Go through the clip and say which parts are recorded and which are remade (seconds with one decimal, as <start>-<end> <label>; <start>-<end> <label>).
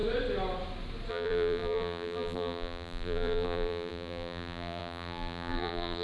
0.0-1.1 recorded; 1.1-6.0 remade